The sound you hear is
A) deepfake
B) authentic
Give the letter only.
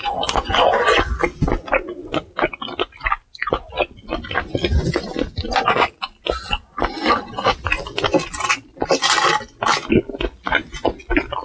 B